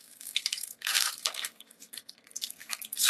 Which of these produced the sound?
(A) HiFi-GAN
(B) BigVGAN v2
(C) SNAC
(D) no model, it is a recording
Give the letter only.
C